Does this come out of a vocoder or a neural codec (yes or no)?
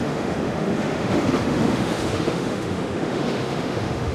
yes